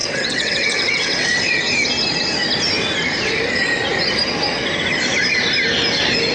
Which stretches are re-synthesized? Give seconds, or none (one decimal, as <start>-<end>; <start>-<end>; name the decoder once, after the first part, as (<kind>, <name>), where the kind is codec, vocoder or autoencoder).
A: 0.0-1.6 (vocoder, WaveNeXt)